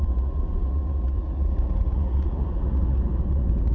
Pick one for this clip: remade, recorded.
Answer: remade